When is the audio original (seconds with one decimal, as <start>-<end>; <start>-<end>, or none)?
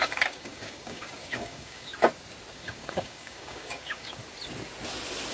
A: 1.9-2.5; 4.2-5.3